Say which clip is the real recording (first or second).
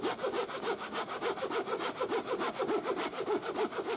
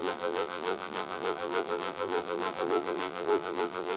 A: first